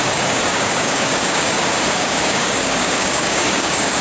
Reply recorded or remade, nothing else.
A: remade